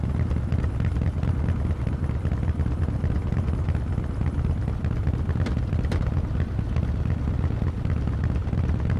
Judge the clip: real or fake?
real